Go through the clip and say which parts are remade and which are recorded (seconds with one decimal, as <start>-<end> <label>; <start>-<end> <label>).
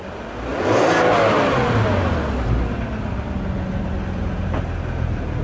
0.0-5.4 recorded